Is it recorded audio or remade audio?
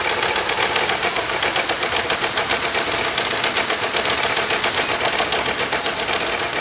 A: recorded